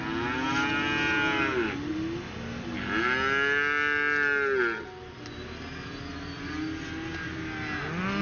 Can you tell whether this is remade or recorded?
recorded